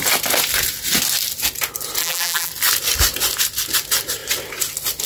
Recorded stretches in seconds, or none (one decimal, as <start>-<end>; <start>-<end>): 0.0-2.0; 2.5-5.1